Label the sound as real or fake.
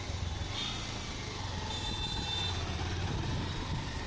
real